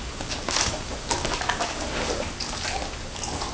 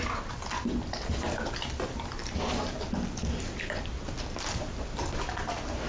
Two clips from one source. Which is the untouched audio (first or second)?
second